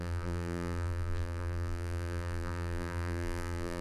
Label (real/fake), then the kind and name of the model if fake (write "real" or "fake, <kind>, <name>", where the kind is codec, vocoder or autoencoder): fake, vocoder, BigVGAN v2